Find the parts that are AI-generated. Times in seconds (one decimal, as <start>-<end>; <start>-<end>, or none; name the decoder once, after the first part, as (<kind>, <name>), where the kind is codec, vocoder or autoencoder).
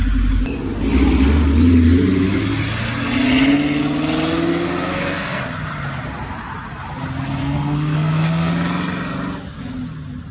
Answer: 4.5-5.4 (codec, SNAC); 7.4-8.5